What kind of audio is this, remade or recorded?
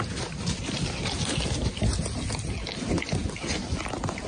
recorded